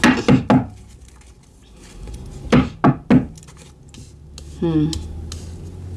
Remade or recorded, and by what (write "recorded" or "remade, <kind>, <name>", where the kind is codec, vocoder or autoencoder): recorded